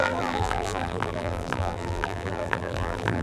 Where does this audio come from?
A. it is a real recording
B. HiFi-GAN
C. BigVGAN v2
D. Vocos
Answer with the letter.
C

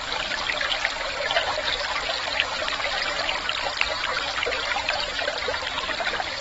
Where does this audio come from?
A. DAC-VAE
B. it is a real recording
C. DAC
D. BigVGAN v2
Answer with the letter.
B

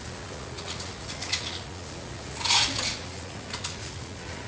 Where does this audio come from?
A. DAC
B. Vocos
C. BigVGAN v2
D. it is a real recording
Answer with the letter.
B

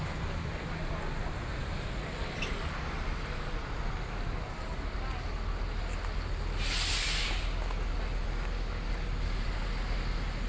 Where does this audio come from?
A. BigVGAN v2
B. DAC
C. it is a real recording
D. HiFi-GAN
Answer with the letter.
C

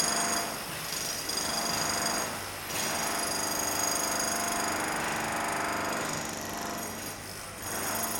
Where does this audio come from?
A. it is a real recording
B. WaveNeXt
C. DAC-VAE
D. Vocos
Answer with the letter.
A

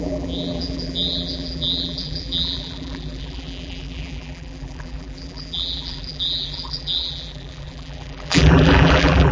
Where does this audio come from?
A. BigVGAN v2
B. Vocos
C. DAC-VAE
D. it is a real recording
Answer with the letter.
A